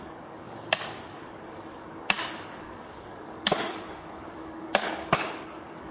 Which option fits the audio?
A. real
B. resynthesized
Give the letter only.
B